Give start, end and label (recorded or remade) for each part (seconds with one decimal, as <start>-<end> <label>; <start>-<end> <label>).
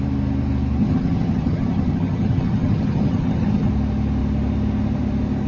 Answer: 0.0-0.8 recorded; 0.8-3.7 remade; 3.7-5.5 recorded